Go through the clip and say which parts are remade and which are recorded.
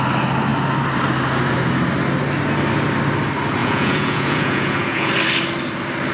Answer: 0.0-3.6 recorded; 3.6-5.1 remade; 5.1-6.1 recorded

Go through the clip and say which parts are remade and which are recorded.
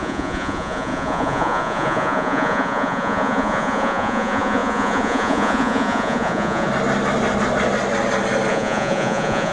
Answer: 0.0-6.7 remade; 6.7-8.5 recorded; 8.5-9.5 remade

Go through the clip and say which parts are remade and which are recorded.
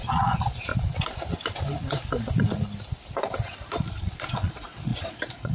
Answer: 0.0-0.7 remade; 0.7-4.0 recorded; 4.0-5.5 remade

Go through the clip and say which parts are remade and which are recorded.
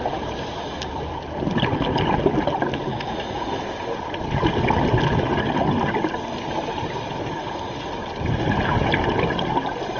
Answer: 0.0-2.9 recorded; 2.9-3.5 remade; 3.5-10.0 recorded